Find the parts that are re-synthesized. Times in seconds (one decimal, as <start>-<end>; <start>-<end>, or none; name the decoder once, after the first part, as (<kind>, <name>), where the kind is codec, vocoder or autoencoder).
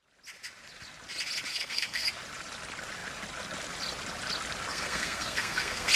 1.5-2.1 (codec, SNAC); 4.7-5.9